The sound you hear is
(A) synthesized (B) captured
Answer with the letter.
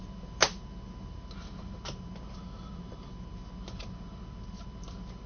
B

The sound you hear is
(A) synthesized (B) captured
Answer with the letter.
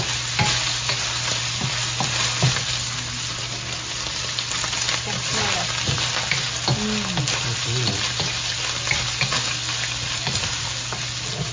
B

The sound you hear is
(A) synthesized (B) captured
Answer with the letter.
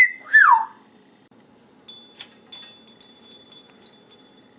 B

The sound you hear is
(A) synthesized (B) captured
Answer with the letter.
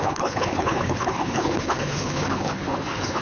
A